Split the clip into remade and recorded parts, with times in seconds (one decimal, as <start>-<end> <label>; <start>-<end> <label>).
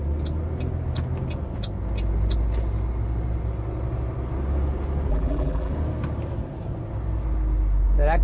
0.0-5.1 recorded; 5.1-5.7 remade; 5.7-8.2 recorded